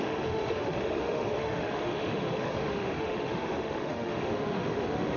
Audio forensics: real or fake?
fake